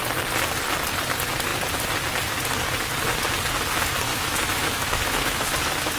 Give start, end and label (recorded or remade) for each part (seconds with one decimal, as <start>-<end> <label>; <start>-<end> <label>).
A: 0.0-4.1 recorded; 4.1-5.5 remade; 5.5-6.0 recorded